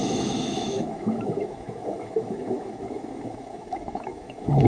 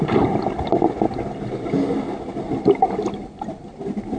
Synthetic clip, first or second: first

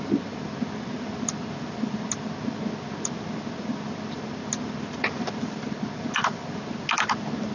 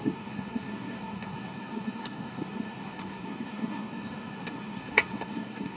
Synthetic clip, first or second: second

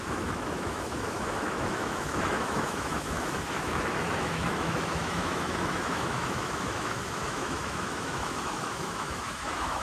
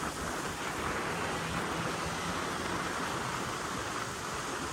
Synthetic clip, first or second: first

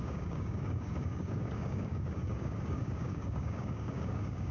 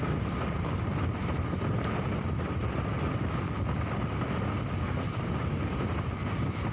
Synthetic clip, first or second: first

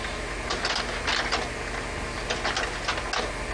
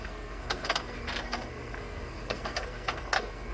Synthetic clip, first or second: second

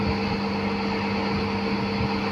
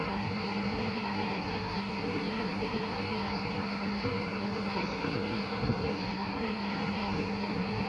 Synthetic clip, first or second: second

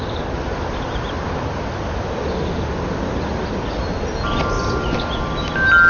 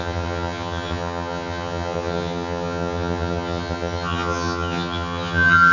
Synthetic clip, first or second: second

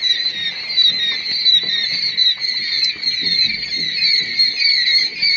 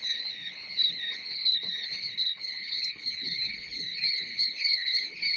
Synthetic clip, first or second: second